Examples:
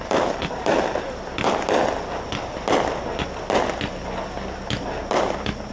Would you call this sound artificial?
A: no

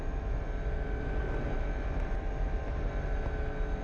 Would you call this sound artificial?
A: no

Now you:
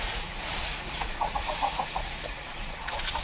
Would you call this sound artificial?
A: yes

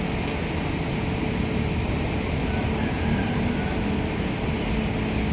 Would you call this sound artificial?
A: no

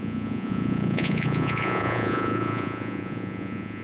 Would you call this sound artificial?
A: yes